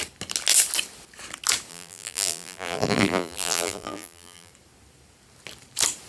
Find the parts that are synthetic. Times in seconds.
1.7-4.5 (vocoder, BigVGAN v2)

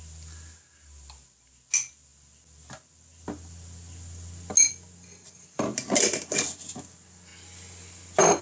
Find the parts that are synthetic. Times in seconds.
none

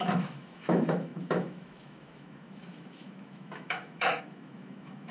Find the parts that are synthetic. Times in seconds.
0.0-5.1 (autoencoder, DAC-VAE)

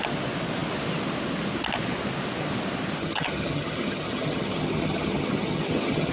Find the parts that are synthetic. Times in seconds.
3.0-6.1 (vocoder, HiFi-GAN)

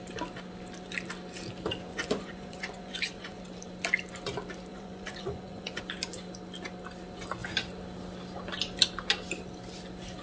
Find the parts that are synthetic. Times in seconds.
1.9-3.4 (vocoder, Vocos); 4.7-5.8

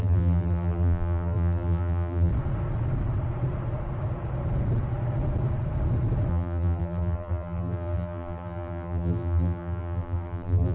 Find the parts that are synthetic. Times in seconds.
0.0-2.3 (vocoder, BigVGAN v2); 6.3-10.7

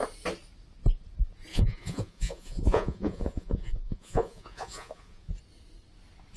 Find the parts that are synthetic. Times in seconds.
1.5-5.3 (vocoder, Vocos)